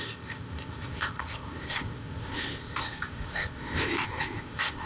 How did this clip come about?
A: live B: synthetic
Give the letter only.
B